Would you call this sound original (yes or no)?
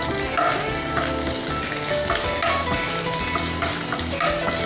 yes